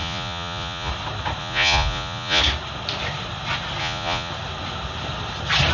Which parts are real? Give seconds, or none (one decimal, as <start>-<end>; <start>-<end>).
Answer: 0.9-1.4; 2.4-3.8; 4.3-5.7